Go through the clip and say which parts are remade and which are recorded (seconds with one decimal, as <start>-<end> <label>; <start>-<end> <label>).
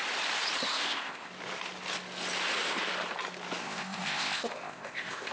0.0-0.7 recorded; 0.7-1.3 remade; 1.3-3.6 recorded; 3.6-5.3 remade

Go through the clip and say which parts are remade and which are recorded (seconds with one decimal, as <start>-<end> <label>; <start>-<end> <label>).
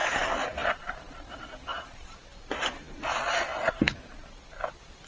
0.0-5.1 recorded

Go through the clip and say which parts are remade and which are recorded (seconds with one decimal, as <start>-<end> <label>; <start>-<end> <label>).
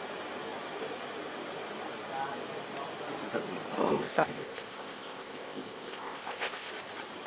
0.0-3.8 recorded; 3.8-6.7 remade; 6.7-7.3 recorded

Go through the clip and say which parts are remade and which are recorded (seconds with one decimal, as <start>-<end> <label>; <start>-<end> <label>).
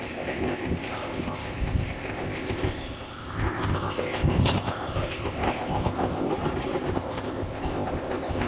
0.0-6.3 remade; 6.3-6.9 recorded; 6.9-8.5 remade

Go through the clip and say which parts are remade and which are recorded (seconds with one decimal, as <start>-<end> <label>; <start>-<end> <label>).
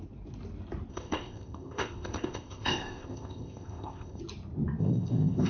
0.0-0.9 recorded; 0.9-4.2 remade; 4.2-4.8 recorded; 4.8-5.5 remade